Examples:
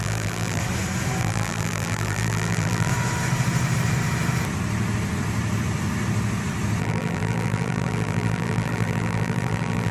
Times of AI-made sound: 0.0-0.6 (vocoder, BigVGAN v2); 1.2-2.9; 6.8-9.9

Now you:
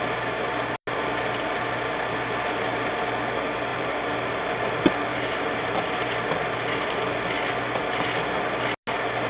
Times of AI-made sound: 3.7-4.5 (vocoder, BigVGAN v2); 5.1-5.7

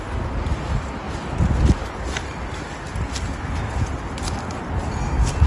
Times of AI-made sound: none

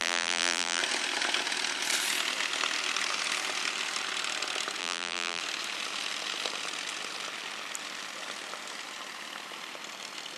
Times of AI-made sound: 0.0-0.8 (vocoder, BigVGAN v2); 4.8-5.4